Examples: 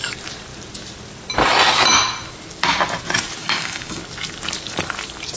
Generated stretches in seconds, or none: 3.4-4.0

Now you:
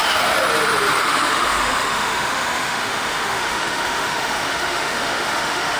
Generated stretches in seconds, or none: 1.0-5.8

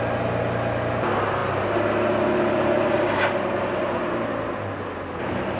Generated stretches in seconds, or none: none

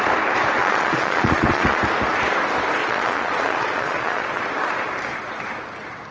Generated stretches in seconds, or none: 0.6-1.8; 2.8-4.4

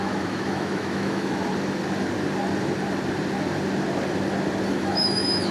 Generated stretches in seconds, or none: 0.0-1.4; 4.7-5.5

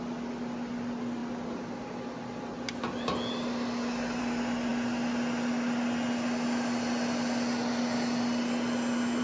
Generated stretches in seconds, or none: none